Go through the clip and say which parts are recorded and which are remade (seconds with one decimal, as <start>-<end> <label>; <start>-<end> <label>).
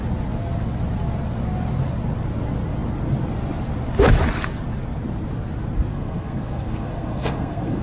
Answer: 0.0-5.9 recorded; 5.9-7.8 remade